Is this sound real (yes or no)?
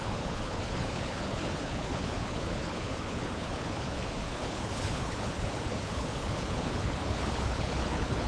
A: no